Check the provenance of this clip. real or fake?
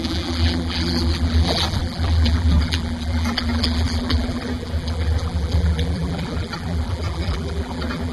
fake